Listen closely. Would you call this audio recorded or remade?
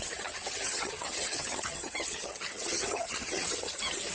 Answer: remade